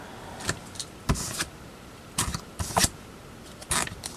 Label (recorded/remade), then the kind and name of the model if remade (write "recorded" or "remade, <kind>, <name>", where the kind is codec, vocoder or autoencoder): remade, vocoder, BigVGAN v2